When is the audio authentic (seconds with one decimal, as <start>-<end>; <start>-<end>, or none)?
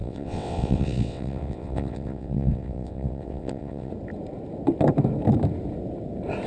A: 3.9-6.5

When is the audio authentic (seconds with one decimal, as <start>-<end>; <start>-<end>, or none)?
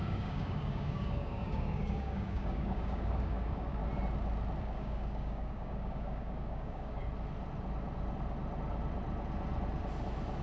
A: 3.8-4.6; 7.0-10.4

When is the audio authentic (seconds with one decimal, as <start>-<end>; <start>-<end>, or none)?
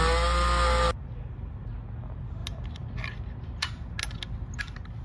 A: 0.0-5.0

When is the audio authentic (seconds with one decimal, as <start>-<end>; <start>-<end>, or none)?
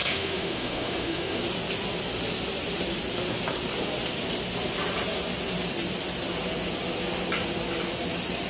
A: 1.4-8.5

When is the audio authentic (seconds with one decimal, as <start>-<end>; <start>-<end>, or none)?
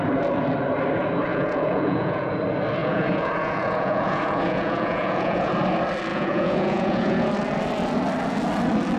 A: 0.0-1.3; 2.3-2.8; 5.5-6.1; 7.3-9.0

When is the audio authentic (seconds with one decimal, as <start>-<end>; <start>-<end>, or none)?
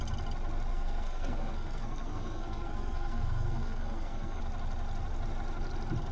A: 0.0-0.7; 4.4-6.1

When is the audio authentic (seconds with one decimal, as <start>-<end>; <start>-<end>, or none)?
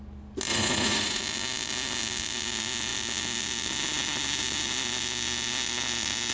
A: 0.0-0.5; 1.2-6.3